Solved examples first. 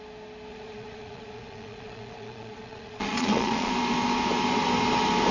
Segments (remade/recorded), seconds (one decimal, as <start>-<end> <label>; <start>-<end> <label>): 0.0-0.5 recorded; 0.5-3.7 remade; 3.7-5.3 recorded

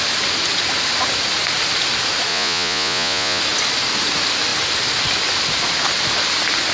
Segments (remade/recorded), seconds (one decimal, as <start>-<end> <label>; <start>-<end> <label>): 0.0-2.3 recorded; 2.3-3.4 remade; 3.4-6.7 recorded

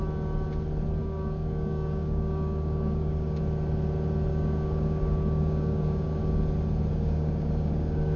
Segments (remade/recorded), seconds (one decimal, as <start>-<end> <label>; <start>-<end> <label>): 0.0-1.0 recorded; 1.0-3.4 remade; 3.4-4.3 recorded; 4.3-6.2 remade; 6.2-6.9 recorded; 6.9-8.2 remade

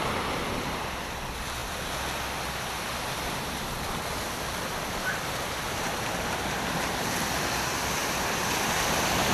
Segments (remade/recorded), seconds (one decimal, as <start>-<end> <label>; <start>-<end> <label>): 0.0-9.3 recorded